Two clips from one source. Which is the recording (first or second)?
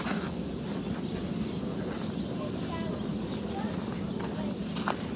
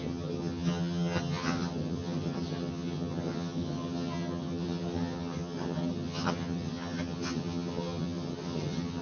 first